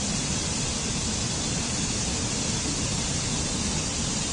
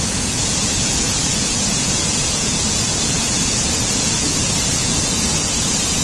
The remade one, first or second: second